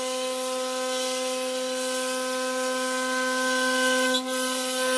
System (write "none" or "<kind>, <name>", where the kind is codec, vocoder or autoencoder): none